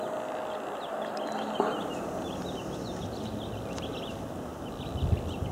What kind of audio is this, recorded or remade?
recorded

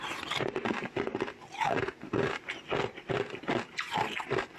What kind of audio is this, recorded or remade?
recorded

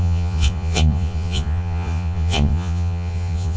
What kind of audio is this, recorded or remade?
remade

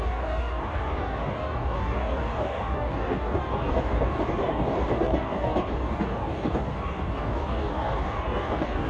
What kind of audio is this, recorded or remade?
remade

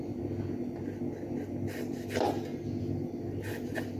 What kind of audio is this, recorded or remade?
recorded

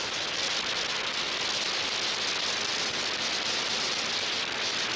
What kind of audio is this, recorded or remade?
recorded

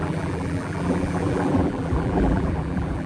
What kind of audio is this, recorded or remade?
remade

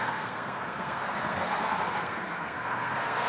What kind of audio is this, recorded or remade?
remade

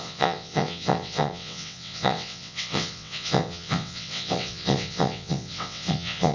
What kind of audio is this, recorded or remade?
remade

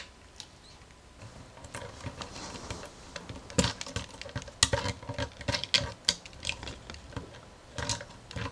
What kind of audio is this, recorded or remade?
recorded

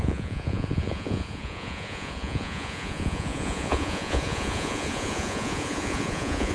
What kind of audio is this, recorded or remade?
remade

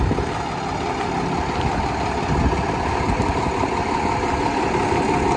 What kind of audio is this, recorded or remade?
recorded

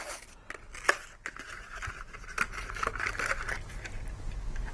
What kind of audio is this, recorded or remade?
recorded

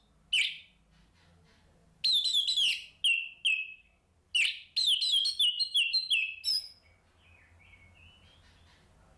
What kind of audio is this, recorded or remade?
recorded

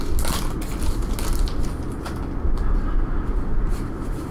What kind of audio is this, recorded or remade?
recorded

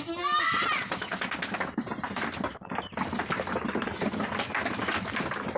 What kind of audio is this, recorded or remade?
recorded